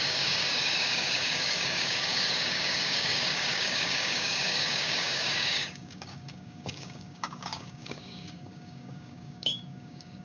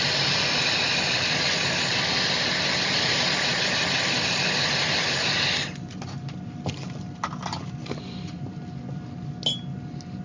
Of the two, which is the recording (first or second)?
second